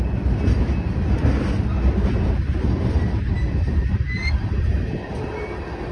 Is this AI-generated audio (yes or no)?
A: no